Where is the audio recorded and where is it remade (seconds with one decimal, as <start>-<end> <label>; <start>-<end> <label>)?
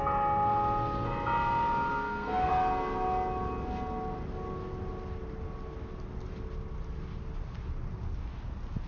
0.0-1.9 recorded; 1.9-2.5 remade; 2.5-8.9 recorded